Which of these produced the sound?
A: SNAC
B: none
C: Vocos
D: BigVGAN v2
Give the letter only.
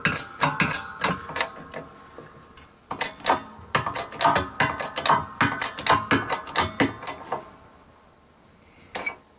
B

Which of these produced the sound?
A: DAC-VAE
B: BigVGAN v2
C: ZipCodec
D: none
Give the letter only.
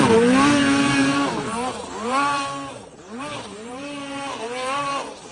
B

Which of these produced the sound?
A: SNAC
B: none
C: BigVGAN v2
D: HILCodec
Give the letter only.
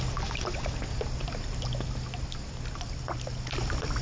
B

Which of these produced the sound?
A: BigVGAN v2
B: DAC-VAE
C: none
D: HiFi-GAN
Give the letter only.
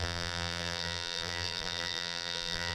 A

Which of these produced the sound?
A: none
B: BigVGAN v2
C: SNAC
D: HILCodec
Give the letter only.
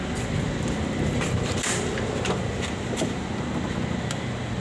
A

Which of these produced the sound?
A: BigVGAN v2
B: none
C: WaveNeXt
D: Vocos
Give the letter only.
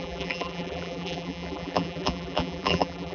A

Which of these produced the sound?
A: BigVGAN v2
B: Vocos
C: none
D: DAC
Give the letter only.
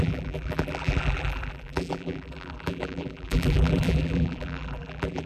A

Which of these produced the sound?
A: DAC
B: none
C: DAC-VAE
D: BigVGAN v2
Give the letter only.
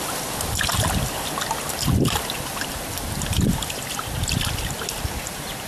B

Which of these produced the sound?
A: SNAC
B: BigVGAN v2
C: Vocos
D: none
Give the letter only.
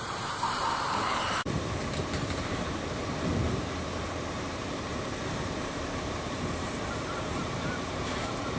B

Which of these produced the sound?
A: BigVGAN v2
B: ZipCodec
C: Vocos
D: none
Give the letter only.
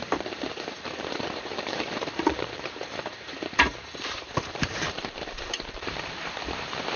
A